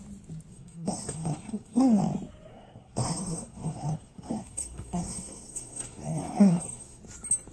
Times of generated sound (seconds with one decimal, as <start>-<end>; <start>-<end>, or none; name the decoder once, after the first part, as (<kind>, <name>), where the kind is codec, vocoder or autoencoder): 0.5-2.0 (codec, SNAC); 2.5-7.0